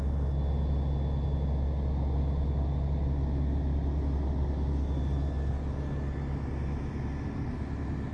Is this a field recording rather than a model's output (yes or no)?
yes